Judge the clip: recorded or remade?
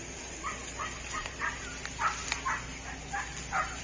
recorded